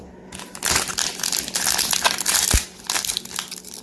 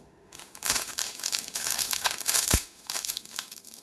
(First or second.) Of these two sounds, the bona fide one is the first